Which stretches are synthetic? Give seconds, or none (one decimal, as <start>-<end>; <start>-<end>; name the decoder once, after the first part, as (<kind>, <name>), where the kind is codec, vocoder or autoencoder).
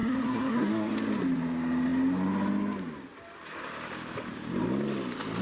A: 0.0-0.9 (codec, SNAC)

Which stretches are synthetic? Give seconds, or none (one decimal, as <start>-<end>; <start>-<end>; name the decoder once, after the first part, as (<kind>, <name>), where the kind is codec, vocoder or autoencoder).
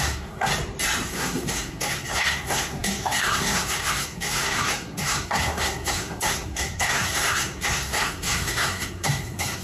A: 0.0-0.5 (codec, SNAC); 1.1-9.6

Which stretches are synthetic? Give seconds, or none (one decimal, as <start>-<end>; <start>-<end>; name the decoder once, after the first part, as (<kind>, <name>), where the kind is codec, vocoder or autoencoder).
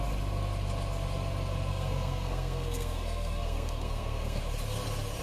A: 1.7-4.4 (codec, SNAC)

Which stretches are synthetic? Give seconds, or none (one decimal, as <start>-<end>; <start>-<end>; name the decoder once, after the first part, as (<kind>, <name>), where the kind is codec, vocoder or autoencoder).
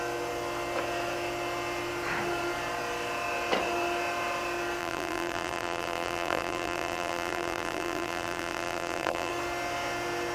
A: 4.8-9.3 (vocoder, BigVGAN v2)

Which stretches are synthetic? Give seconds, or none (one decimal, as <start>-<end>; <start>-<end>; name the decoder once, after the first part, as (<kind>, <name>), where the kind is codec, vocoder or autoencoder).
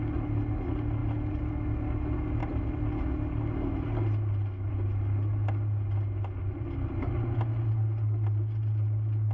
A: none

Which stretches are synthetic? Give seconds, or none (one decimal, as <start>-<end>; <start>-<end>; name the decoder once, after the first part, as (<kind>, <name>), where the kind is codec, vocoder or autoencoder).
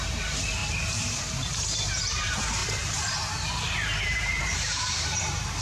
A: 0.0-5.6 (vocoder, BigVGAN v2)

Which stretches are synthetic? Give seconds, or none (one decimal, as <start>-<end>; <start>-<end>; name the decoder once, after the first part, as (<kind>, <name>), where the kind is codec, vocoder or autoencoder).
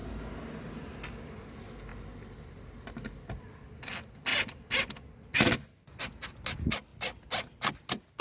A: none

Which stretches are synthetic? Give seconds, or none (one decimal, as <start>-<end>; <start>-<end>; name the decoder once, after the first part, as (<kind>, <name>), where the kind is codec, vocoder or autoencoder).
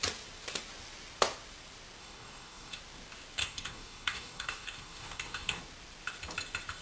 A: 2.0-2.8 (codec, DAC); 3.4-5.6